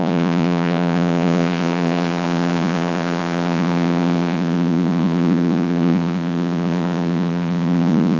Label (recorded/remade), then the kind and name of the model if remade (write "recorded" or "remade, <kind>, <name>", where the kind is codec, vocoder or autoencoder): remade, vocoder, Vocos